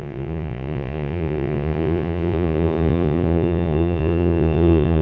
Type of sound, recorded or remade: remade